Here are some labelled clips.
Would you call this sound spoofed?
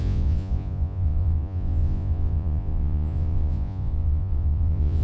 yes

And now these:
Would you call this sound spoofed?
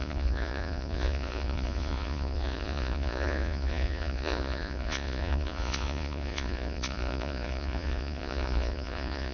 yes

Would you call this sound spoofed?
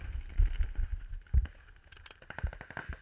no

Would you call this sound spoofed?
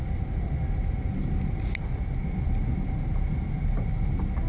no